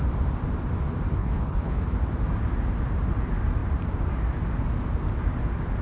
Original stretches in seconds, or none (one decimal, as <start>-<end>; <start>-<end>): 0.0-1.2; 1.8-5.8